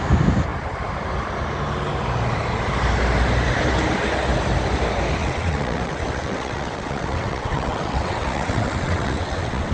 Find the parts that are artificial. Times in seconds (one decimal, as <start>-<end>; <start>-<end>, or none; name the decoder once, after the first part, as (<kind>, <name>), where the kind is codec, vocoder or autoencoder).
5.2-9.7 (vocoder, WaveNeXt)